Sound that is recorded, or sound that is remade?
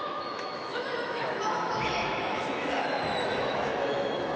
remade